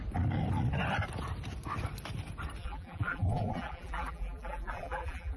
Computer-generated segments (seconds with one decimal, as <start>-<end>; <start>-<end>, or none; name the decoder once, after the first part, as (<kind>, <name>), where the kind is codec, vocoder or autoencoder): 2.6-5.4 (vocoder, BigVGAN v2)